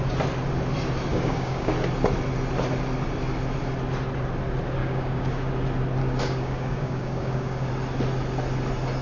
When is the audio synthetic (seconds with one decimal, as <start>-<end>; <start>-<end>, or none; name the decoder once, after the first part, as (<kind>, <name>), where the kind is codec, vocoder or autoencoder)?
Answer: 1.1-1.7 (codec, DAC); 4.8-5.5; 6.0-7.7